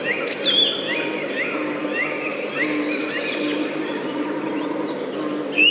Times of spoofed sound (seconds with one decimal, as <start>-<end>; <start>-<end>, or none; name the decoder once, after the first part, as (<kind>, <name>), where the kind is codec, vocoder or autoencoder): 1.8-2.5 (vocoder, BigVGAN v2); 3.5-4.5